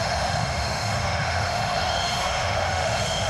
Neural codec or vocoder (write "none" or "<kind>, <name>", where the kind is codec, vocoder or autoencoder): autoencoder, DAC-VAE